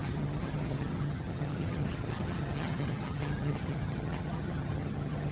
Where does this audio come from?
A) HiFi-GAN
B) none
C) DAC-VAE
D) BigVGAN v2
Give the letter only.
A